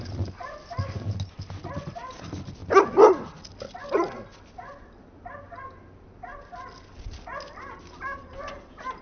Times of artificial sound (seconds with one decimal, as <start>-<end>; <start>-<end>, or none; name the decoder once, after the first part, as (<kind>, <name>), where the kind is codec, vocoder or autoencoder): none